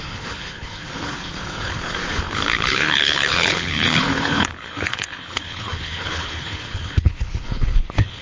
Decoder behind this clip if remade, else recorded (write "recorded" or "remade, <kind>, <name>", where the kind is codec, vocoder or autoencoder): remade, codec, HILCodec